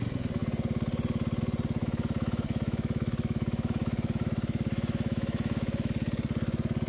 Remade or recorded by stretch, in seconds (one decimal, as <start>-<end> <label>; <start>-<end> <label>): 0.0-1.8 recorded; 1.8-5.9 remade; 5.9-6.9 recorded